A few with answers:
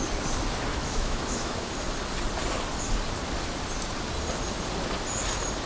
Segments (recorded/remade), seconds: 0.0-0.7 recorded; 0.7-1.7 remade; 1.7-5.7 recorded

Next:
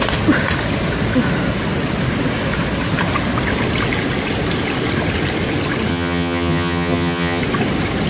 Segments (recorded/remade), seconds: 0.0-5.9 recorded; 5.9-7.4 remade; 7.4-8.1 recorded

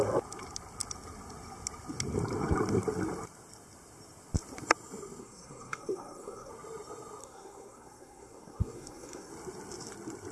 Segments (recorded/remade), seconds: 0.0-5.2 recorded; 5.2-6.5 remade; 6.5-7.2 recorded; 7.2-9.3 remade; 9.3-10.3 recorded

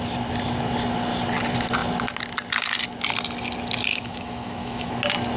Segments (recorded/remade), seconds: 0.0-3.9 recorded; 3.9-4.9 remade; 4.9-5.4 recorded

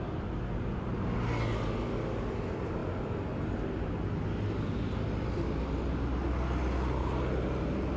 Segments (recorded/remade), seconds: 0.0-8.0 recorded

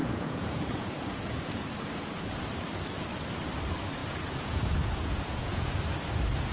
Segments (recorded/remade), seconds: 0.0-1.7 remade; 1.7-4.0 recorded; 4.0-5.8 remade; 5.8-6.5 recorded